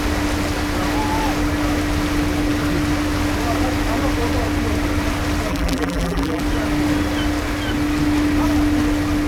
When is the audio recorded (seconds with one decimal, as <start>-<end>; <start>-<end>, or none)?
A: 0.0-5.5; 6.4-9.3